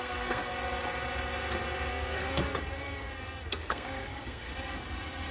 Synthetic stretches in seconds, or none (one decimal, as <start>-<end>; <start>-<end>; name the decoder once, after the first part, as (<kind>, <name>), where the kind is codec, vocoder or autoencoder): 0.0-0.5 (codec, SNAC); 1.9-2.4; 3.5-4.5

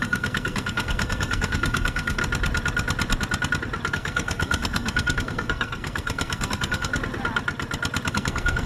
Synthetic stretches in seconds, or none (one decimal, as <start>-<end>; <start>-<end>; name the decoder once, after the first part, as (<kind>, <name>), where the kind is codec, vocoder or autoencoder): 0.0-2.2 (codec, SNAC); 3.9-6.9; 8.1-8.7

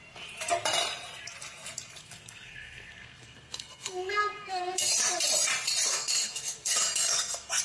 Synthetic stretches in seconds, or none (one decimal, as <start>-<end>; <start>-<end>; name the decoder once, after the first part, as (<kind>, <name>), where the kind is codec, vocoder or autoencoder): 2.0-4.9 (codec, SNAC); 5.9-7.6

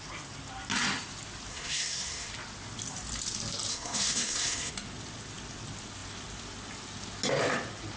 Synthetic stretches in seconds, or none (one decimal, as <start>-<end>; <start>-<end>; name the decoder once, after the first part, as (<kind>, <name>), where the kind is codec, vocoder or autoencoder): 1.5-2.3 (codec, SNAC); 3.7-4.7

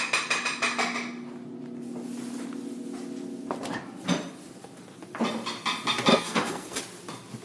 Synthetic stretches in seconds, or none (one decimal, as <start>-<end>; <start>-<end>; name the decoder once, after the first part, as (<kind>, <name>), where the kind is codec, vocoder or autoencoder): 6.1-6.8 (codec, SNAC)

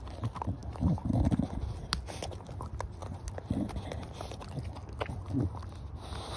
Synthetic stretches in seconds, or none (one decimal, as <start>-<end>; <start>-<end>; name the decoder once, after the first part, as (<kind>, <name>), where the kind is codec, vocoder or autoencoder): none

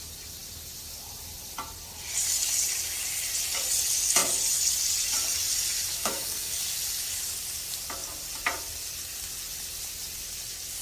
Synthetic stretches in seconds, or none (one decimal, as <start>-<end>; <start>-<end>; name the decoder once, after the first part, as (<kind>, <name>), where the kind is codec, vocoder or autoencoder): 5.9-6.6 (codec, SNAC)